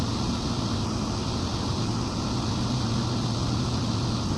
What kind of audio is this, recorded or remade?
recorded